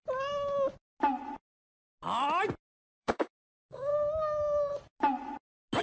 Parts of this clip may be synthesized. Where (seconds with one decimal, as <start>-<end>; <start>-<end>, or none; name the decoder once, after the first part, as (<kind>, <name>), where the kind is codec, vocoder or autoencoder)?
2.6-3.9 (codec, DAC)